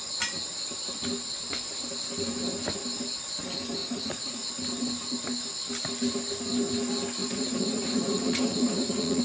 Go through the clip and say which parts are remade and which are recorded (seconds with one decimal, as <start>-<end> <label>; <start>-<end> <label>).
0.0-3.8 recorded; 3.8-4.5 remade; 4.5-7.2 recorded; 7.2-9.2 remade

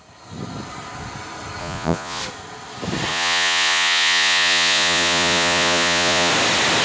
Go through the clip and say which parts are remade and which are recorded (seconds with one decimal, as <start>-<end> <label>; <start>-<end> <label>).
0.0-1.6 recorded; 1.6-2.2 remade; 2.2-3.1 recorded; 3.1-6.3 remade; 6.3-6.8 recorded

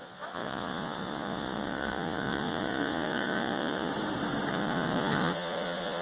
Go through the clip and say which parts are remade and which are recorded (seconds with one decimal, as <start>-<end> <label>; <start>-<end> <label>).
0.0-3.9 remade; 3.9-4.5 recorded; 4.5-6.0 remade

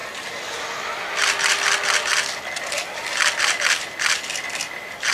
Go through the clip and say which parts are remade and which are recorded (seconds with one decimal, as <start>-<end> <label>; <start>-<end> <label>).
0.0-5.1 recorded